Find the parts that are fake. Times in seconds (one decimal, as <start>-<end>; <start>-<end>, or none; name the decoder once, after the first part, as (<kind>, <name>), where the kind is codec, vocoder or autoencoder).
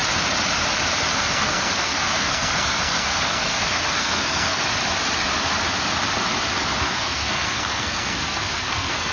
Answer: 1.1-4.6 (codec, SNAC); 6.8-9.1